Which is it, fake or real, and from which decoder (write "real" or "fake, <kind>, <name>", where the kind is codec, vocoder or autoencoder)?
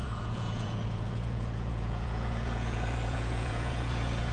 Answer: fake, vocoder, Vocos